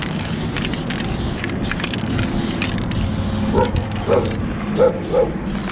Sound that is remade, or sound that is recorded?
recorded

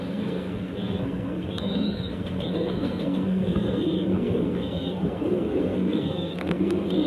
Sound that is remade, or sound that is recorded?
remade